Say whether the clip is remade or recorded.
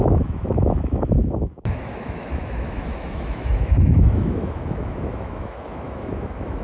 remade